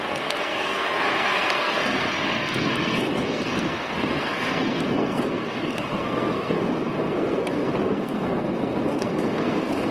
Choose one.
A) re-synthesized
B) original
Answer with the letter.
A